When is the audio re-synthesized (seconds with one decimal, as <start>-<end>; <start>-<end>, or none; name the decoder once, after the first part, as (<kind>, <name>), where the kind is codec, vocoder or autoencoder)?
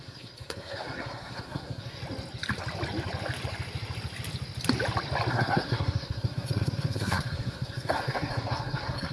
0.0-2.0 (codec, SNAC); 5.3-9.1